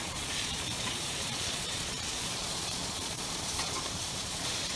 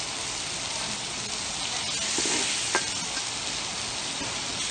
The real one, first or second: second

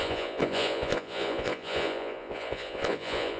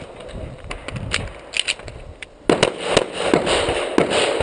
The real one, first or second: second